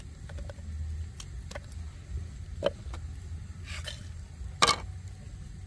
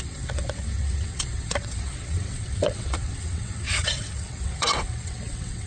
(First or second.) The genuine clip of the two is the first